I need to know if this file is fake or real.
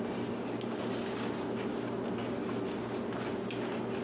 real